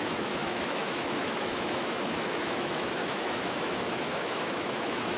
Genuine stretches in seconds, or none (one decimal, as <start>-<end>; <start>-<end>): none